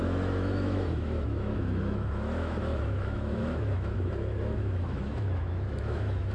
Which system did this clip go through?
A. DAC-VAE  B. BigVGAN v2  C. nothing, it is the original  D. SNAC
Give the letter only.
A